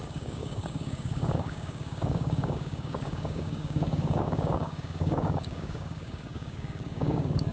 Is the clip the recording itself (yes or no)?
no